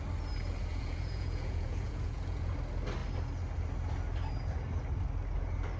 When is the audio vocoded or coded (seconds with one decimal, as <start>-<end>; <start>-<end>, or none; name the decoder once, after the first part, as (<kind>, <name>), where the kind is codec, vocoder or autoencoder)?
0.7-2.5 (vocoder, Vocos)